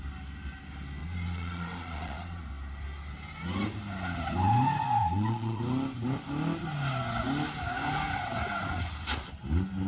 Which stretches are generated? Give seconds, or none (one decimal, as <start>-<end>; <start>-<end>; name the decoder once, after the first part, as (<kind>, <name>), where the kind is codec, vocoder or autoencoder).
1.0-2.5 (vocoder, Vocos); 5.0-5.6